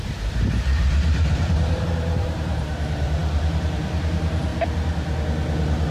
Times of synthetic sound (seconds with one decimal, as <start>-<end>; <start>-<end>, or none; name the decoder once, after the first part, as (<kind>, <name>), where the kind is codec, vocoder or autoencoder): 0.0-4.5 (vocoder, BigVGAN v2)